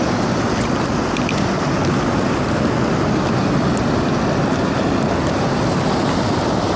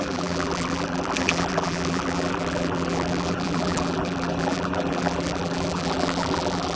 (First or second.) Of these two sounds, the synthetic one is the second